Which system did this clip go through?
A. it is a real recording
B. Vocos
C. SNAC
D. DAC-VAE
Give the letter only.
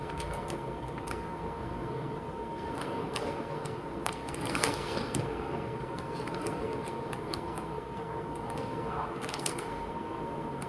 C